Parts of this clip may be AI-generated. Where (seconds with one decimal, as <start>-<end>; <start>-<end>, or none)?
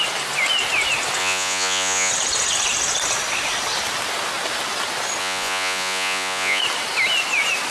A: 1.2-2.1; 5.2-6.6